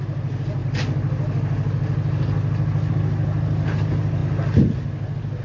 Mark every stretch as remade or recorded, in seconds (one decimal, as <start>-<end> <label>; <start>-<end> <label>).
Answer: 0.0-5.4 recorded

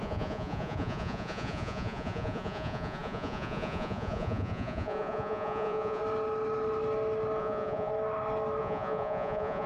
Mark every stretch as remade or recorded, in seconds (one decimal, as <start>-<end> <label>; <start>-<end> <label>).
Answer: 0.0-6.0 remade; 6.0-7.4 recorded; 7.4-7.9 remade; 7.9-8.6 recorded; 8.6-9.7 remade

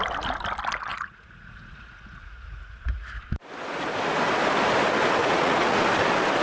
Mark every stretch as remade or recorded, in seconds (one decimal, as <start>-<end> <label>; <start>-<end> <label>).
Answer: 0.0-0.9 recorded; 0.9-3.2 remade; 3.2-5.2 recorded; 5.2-5.8 remade; 5.8-6.4 recorded

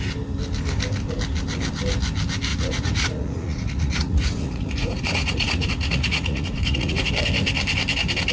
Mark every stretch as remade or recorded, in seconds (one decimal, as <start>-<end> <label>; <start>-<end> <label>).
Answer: 0.0-2.5 recorded; 2.5-7.1 remade; 7.1-8.3 recorded

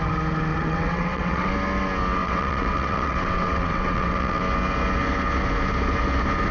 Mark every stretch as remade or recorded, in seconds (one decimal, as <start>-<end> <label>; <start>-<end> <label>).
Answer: 0.0-0.5 recorded; 0.5-1.5 remade; 1.5-2.2 recorded; 2.2-4.4 remade; 4.4-6.5 recorded

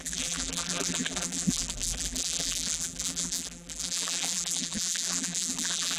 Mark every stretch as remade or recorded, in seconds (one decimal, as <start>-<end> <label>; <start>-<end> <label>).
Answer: 0.0-6.0 remade